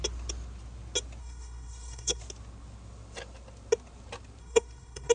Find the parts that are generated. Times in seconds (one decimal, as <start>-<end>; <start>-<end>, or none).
1.2-2.2; 4.4-5.1